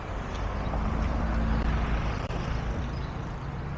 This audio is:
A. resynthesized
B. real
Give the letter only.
B